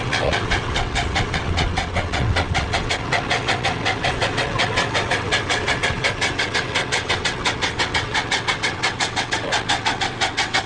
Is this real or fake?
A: fake